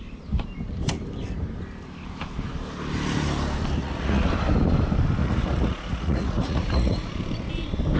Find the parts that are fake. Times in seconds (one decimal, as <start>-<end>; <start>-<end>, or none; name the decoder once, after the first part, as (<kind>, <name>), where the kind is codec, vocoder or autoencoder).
3.8-4.3 (vocoder, Vocos); 5.2-7.2